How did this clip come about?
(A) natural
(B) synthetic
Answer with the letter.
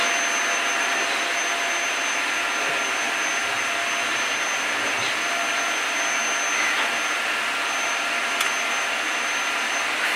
A